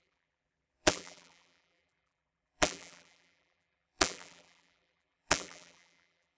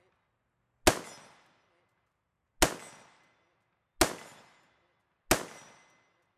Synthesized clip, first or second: first